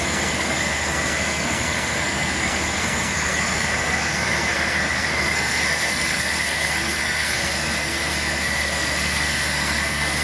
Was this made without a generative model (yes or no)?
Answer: no